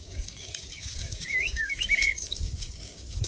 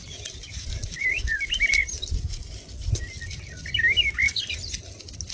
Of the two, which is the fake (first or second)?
first